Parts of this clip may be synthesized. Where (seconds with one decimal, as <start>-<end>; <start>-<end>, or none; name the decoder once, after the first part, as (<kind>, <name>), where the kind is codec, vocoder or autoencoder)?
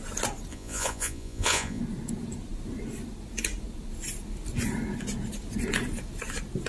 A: 0.5-1.8 (vocoder, Vocos)